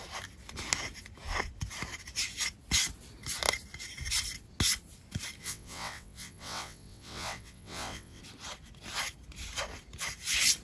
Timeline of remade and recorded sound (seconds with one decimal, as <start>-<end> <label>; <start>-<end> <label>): 0.0-5.4 recorded; 5.4-8.2 remade; 8.2-10.6 recorded